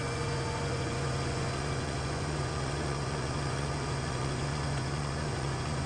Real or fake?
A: fake